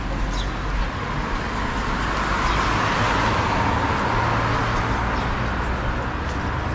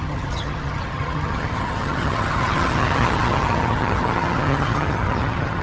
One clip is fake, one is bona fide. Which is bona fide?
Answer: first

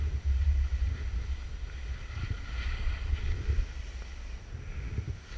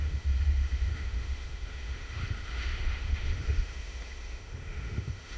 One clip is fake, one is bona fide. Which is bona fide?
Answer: first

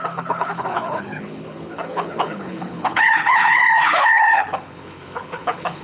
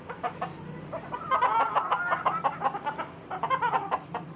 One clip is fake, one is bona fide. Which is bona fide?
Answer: second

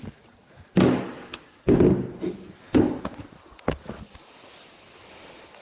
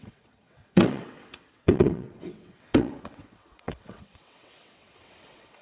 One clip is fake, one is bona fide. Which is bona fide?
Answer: first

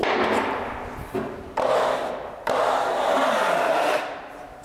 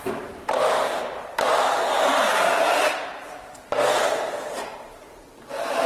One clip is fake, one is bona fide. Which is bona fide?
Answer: first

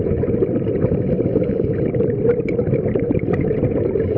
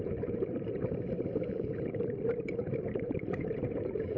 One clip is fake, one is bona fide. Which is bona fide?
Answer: first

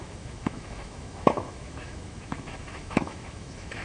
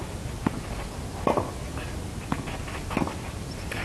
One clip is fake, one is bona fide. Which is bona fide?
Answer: second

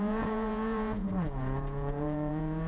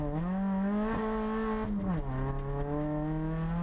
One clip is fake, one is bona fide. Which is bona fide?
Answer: second